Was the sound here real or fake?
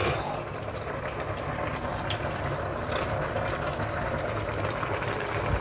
real